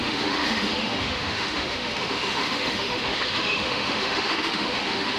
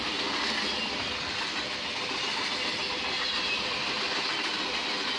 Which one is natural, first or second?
second